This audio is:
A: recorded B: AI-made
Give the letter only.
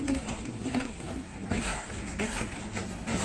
B